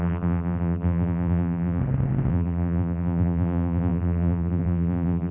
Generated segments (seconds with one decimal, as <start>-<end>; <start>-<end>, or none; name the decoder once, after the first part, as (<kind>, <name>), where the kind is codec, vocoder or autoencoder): 0.0-1.8 (vocoder, BigVGAN v2); 2.3-5.3